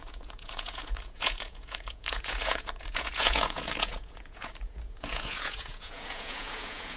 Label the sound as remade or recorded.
remade